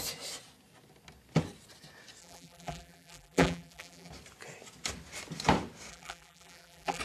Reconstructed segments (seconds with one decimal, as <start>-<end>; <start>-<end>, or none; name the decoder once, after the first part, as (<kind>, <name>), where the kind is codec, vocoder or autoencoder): 2.2-4.1 (vocoder, BigVGAN v2); 5.9-7.0